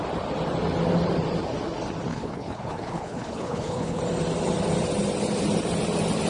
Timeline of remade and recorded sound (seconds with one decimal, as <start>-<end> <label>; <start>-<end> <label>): 0.0-2.1 recorded; 2.1-4.0 remade; 4.0-6.3 recorded